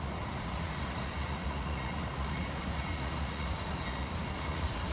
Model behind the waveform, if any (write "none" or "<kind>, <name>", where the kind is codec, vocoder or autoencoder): vocoder, Vocos